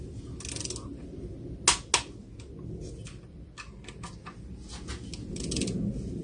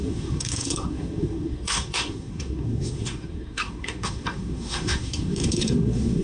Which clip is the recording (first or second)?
first